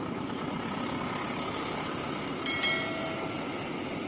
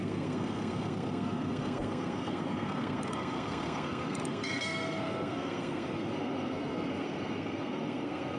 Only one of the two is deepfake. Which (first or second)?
second